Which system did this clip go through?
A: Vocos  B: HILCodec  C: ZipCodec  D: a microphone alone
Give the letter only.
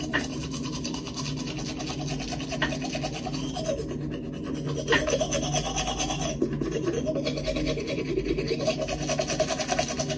D